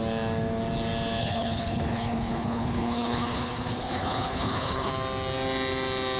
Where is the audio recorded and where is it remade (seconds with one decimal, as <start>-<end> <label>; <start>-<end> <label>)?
0.0-1.2 recorded; 1.2-4.9 remade; 4.9-6.2 recorded